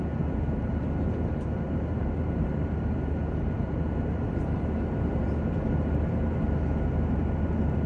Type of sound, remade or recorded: remade